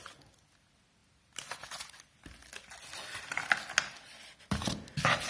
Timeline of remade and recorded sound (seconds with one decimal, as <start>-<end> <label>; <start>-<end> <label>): 0.0-5.3 recorded